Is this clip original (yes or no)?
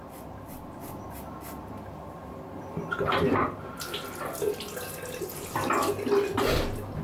yes